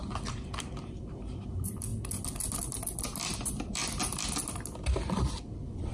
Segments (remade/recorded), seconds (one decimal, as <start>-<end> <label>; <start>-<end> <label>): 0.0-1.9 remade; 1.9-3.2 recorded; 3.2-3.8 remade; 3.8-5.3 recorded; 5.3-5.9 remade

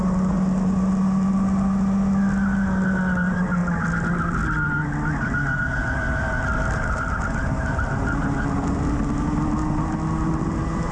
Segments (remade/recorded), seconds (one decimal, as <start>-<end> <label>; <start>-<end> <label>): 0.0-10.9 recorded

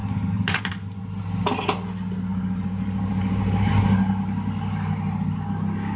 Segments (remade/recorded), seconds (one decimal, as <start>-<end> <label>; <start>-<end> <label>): 0.0-0.7 remade; 0.7-2.3 recorded; 2.3-3.8 remade; 3.8-6.0 recorded